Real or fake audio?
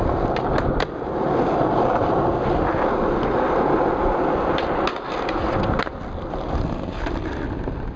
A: real